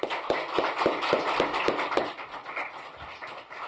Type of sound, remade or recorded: recorded